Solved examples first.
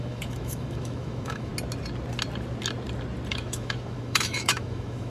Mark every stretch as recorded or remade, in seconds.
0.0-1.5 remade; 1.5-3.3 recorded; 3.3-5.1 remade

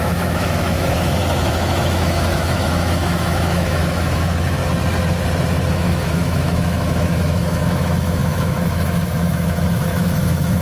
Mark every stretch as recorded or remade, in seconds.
0.0-4.6 remade; 4.6-5.7 recorded; 5.7-10.6 remade

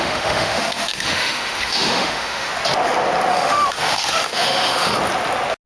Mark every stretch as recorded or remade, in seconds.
0.0-2.5 remade; 2.5-3.3 recorded; 3.3-4.9 remade; 4.9-5.7 recorded

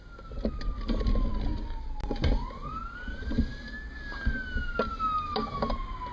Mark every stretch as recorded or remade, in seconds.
0.0-6.1 recorded

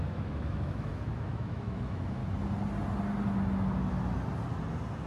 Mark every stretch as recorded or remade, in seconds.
0.0-2.2 remade; 2.2-5.1 recorded

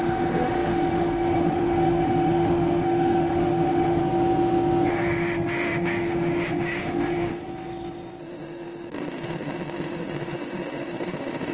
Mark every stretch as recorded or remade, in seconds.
0.0-4.0 remade; 4.0-4.9 recorded; 4.9-7.4 remade; 7.4-8.2 recorded; 8.2-11.5 remade

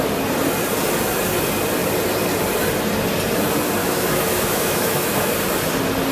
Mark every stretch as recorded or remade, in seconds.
0.0-3.8 recorded; 3.8-5.3 remade; 5.3-6.1 recorded

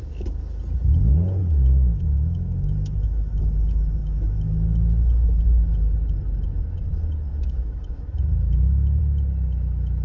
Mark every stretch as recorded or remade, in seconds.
0.0-0.6 remade; 0.6-1.4 recorded; 1.4-3.4 remade; 3.4-4.0 recorded; 4.0-5.4 remade; 5.4-7.3 recorded; 7.3-9.0 remade; 9.0-10.0 recorded